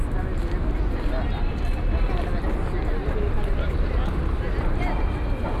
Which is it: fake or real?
real